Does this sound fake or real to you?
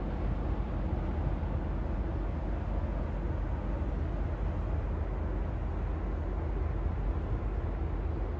real